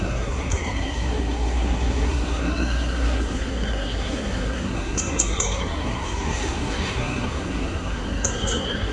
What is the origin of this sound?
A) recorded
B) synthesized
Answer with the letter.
B